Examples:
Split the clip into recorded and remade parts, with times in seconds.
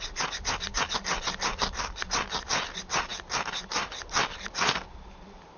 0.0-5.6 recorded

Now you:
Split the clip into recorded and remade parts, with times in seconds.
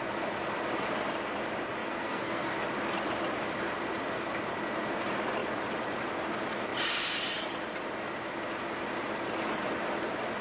0.0-1.8 recorded; 1.8-2.5 remade; 2.5-10.4 recorded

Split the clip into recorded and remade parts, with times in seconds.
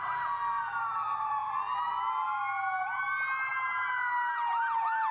0.0-5.1 recorded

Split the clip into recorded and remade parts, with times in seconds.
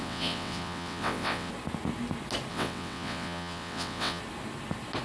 0.0-1.5 remade; 1.5-2.5 recorded; 2.5-4.2 remade; 4.2-5.0 recorded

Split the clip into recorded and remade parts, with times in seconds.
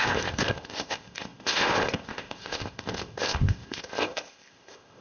0.0-5.0 remade